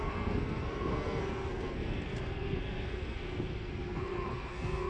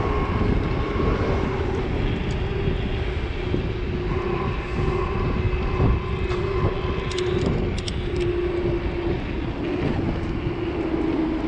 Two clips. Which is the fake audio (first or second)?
first